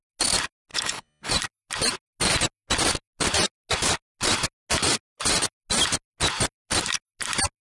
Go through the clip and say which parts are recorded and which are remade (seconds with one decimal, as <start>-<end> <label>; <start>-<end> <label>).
0.0-0.7 recorded; 0.7-1.3 remade; 1.3-7.6 recorded